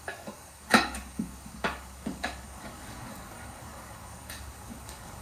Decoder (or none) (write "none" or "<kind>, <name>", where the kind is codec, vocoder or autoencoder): codec, DAC